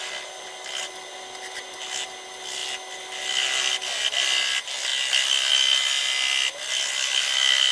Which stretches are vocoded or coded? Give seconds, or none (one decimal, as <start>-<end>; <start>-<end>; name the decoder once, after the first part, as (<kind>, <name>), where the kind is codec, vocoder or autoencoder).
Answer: none